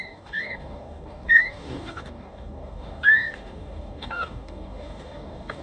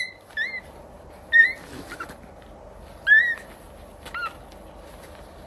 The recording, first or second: second